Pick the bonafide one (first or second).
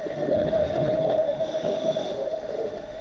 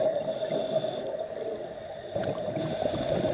second